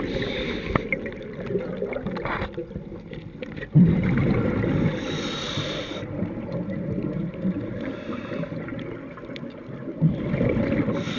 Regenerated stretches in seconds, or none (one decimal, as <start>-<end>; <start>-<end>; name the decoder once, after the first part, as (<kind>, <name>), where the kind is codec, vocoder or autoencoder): none